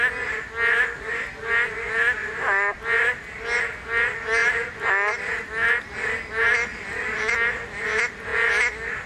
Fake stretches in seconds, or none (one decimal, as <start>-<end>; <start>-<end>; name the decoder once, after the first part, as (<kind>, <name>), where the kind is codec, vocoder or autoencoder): 2.2-2.8 (vocoder, BigVGAN v2); 6.7-7.3